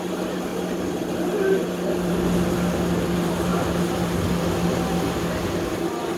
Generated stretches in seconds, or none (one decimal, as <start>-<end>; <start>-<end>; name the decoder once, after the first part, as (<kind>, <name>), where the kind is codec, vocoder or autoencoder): none